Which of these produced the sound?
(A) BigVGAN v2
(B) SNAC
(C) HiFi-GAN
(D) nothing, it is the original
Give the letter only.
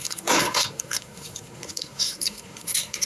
B